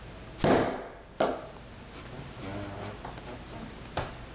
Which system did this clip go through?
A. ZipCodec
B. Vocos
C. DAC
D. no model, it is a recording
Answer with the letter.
D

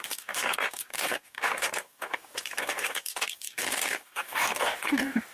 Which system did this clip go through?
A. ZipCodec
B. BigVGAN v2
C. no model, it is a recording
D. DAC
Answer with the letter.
D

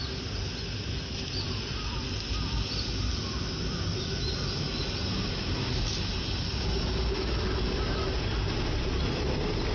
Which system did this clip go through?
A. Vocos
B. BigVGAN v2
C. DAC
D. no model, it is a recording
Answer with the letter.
D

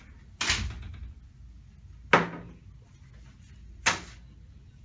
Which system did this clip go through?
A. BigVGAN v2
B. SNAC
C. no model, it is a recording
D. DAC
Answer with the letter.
C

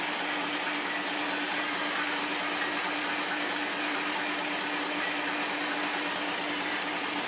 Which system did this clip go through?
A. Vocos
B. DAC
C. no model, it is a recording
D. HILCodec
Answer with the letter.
C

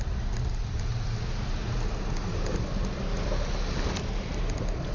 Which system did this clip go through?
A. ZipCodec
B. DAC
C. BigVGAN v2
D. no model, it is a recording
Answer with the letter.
D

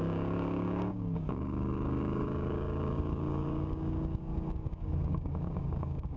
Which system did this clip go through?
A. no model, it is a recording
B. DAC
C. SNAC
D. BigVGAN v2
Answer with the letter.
B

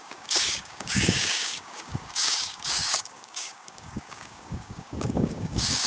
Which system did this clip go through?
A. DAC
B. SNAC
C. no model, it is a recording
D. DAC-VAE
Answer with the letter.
A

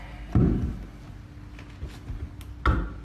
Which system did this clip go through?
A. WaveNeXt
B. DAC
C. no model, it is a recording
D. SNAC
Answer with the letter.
C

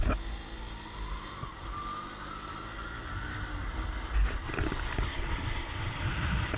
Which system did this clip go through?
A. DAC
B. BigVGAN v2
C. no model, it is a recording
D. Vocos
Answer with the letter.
C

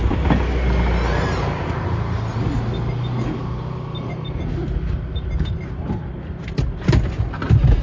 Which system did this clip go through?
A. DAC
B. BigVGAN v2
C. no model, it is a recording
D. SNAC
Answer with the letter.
C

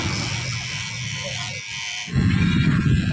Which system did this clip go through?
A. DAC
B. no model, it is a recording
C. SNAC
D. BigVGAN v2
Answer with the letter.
B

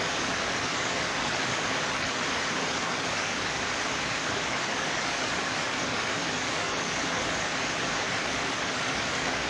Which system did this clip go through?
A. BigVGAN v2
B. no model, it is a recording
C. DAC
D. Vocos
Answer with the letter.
C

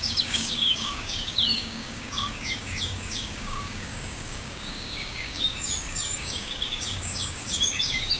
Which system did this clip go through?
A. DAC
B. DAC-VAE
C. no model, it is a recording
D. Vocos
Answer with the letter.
A